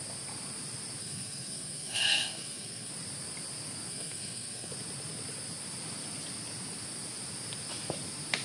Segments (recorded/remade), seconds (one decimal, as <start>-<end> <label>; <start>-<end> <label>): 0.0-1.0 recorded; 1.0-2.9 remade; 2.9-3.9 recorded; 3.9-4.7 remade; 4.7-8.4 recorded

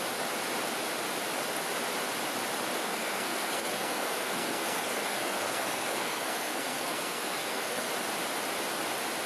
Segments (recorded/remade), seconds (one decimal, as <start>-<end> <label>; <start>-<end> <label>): 0.0-2.8 recorded; 2.8-7.9 remade; 7.9-9.3 recorded

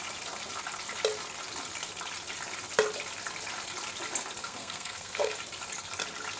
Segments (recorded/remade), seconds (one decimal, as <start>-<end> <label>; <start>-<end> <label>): 0.0-4.4 recorded; 4.4-5.3 remade; 5.3-6.4 recorded

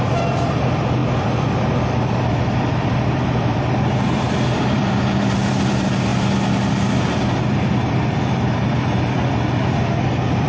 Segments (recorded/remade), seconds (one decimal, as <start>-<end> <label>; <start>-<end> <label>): 0.0-6.1 remade; 6.1-7.9 recorded; 7.9-10.5 remade

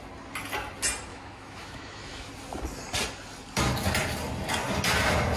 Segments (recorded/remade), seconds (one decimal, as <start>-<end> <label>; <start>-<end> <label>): 0.0-1.1 recorded; 1.1-2.3 remade; 2.3-5.4 recorded

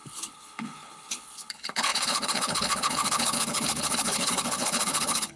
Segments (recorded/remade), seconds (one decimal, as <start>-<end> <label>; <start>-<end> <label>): 0.0-5.4 remade